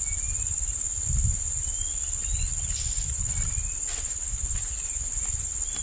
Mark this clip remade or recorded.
recorded